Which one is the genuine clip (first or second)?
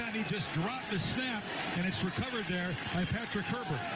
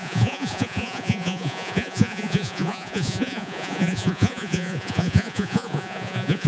first